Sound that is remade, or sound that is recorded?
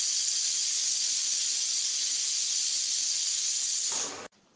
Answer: recorded